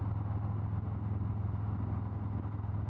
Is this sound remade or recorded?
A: recorded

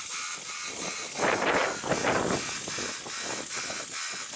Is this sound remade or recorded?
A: recorded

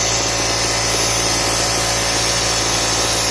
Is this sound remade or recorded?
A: recorded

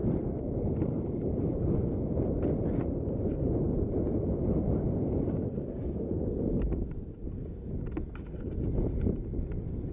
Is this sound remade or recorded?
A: recorded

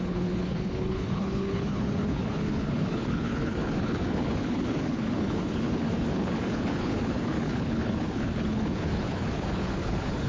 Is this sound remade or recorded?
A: remade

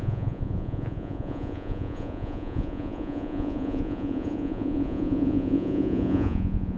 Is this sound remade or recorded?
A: remade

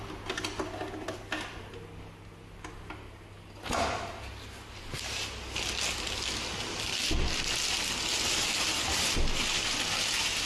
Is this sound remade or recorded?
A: recorded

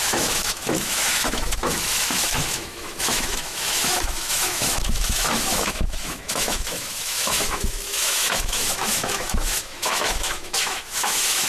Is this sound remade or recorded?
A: remade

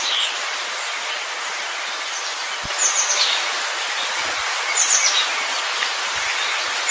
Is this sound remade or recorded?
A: recorded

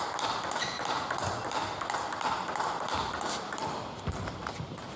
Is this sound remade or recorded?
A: recorded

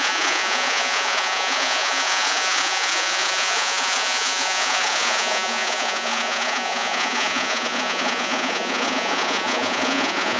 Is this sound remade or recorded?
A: remade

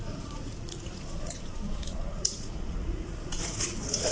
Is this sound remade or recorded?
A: remade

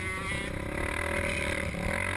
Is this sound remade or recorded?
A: recorded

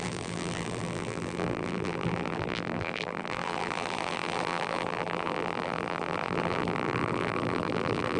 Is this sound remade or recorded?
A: remade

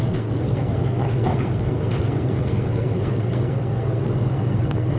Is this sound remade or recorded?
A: remade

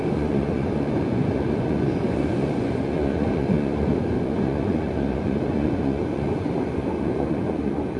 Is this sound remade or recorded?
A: remade